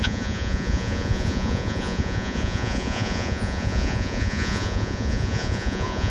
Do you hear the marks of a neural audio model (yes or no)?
yes